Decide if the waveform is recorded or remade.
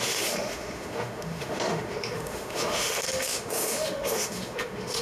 remade